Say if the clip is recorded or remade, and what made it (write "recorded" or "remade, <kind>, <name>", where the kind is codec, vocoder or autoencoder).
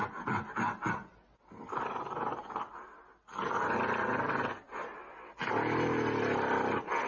recorded